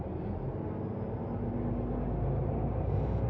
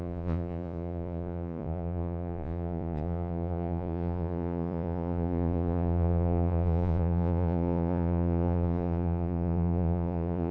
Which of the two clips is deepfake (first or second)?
second